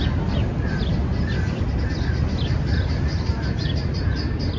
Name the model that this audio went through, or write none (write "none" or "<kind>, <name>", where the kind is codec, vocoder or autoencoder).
none